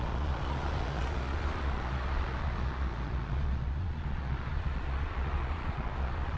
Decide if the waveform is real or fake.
fake